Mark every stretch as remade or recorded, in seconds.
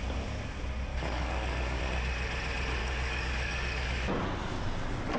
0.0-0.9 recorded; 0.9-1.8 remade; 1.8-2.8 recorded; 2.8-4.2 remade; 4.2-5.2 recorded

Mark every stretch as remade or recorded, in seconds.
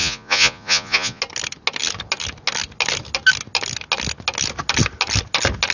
0.0-1.2 remade; 1.2-5.7 recorded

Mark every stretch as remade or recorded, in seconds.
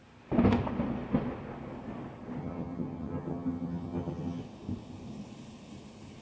0.0-2.4 recorded; 2.4-4.4 remade; 4.4-6.2 recorded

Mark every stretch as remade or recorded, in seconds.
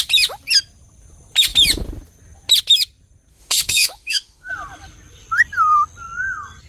0.0-3.3 recorded; 3.3-4.5 remade; 4.5-6.7 recorded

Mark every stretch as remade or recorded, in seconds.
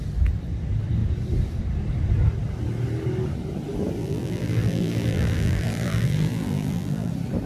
0.0-4.0 recorded; 4.0-7.1 remade; 7.1-7.5 recorded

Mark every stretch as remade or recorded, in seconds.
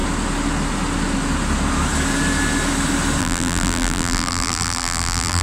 0.0-3.2 recorded; 3.2-5.4 remade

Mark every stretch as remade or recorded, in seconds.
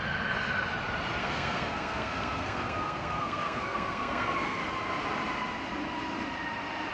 0.0-1.2 recorded; 1.2-4.6 remade; 4.6-6.9 recorded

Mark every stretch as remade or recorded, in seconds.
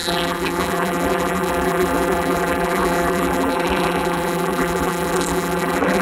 0.0-6.0 remade